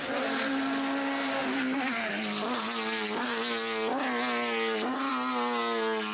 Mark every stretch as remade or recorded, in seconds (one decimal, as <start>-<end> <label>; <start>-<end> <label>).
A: 0.0-6.1 recorded